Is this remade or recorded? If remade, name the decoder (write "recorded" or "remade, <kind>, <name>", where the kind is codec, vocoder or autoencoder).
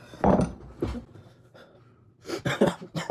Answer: remade, vocoder, BigVGAN v2